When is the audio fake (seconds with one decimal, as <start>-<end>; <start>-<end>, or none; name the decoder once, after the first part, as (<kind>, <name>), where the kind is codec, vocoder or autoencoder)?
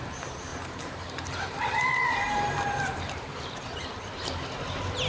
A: 0.5-3.6 (vocoder, BigVGAN v2)